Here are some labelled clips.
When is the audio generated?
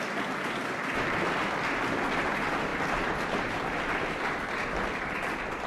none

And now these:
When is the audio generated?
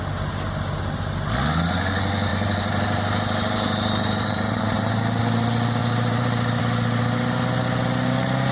2.3-5.2 (vocoder, BigVGAN v2); 5.8-6.6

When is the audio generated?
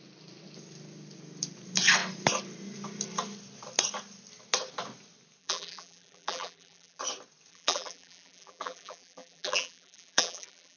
5.4-7.0 (vocoder, BigVGAN v2); 7.5-10.8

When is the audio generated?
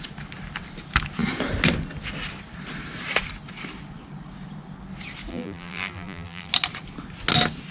5.3-6.5 (vocoder, BigVGAN v2)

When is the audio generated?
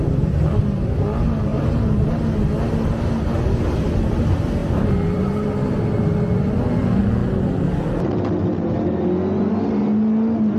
1.5-2.1 (vocoder, BigVGAN v2)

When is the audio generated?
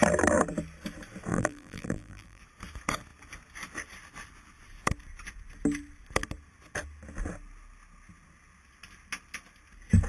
1.3-2.4 (vocoder, BigVGAN v2)